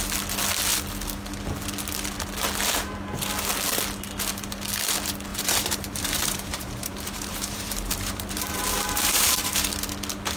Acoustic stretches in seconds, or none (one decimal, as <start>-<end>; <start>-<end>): 0.0-5.3; 9.7-10.4